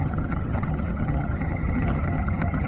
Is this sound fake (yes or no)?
yes